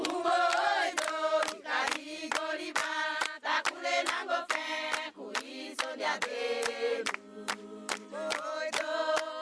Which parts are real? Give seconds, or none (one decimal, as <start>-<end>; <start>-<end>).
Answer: 0.0-9.4